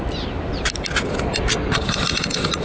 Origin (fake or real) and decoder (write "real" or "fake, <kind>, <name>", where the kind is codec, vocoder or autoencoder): real